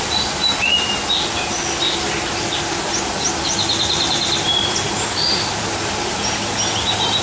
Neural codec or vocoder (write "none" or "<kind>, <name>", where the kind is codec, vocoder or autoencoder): none